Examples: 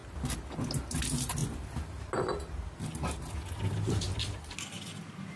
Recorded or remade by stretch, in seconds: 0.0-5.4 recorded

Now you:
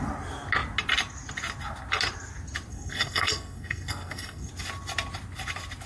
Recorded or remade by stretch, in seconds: 0.0-2.7 recorded; 2.7-4.5 remade; 4.5-5.9 recorded

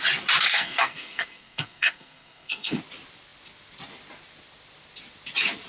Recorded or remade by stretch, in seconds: 0.0-0.5 recorded; 0.5-2.8 remade; 2.8-5.7 recorded

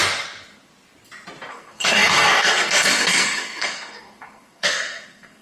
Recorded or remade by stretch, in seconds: 0.0-1.5 recorded; 1.5-5.4 remade

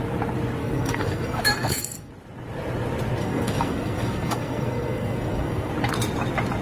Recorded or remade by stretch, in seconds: 0.0-0.6 recorded; 0.6-2.1 remade; 2.1-3.2 recorded; 3.2-5.7 remade; 5.7-6.6 recorded

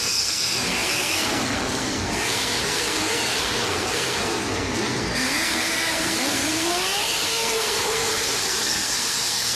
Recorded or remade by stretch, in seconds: 0.0-9.6 remade